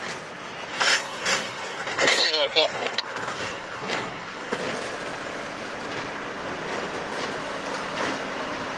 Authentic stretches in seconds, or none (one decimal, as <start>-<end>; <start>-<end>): 0.0-0.7; 4.6-8.8

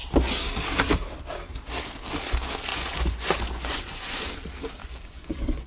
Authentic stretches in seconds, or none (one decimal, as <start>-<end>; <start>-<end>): 0.0-2.7; 4.3-4.8